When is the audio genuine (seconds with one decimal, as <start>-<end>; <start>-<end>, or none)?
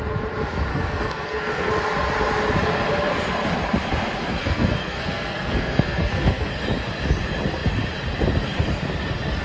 0.0-0.7; 1.7-4.4; 6.5-9.4